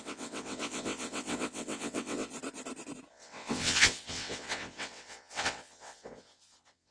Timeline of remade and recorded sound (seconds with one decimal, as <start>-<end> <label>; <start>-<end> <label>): 0.0-2.3 remade; 2.3-3.1 recorded; 3.1-6.9 remade